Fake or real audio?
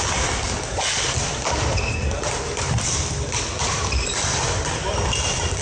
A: real